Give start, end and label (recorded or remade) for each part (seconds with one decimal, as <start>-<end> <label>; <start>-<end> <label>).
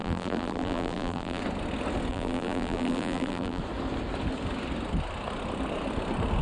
0.0-1.4 remade; 1.4-2.1 recorded; 2.1-3.6 remade; 3.6-6.4 recorded